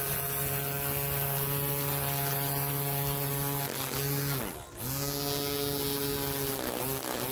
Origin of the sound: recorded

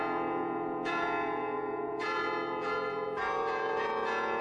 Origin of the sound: remade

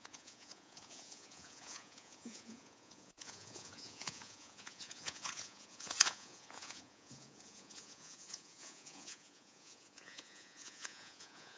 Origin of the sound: remade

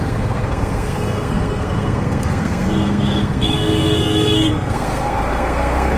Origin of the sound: remade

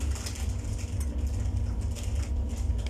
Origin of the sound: recorded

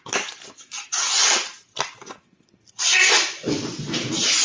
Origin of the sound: remade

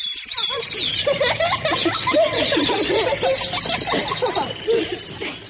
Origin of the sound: recorded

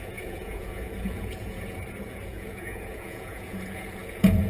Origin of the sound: remade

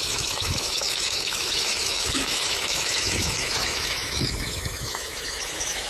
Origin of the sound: remade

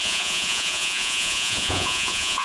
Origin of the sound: remade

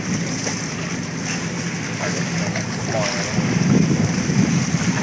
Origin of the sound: recorded